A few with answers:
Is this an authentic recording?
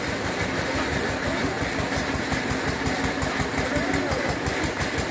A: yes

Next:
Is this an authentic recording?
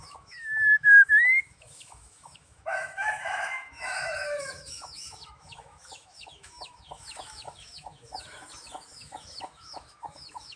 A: no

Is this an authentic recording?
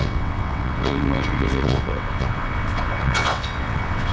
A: no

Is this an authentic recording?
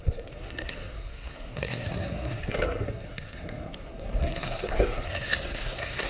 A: no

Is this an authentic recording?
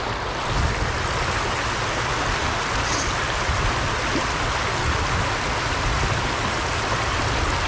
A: yes